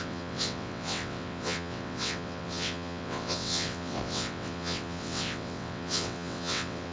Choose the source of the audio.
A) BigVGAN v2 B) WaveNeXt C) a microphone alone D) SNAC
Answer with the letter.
B